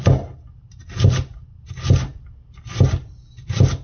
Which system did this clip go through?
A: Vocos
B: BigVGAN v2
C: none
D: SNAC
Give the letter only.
C